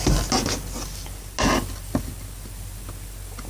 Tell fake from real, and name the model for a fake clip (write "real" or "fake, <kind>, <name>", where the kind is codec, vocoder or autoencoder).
real